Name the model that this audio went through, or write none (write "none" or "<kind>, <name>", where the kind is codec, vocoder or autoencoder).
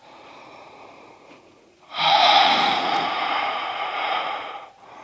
vocoder, Vocos